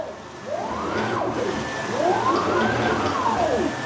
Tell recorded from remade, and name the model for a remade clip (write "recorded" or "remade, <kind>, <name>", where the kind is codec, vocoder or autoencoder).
recorded